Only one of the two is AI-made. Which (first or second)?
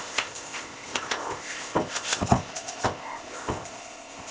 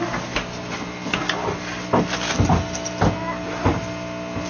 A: first